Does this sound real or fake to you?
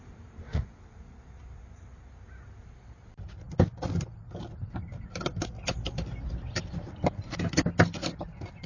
real